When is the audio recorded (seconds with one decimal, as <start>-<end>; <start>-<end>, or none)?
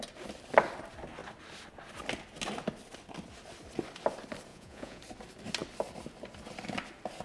0.0-4.5; 5.0-7.2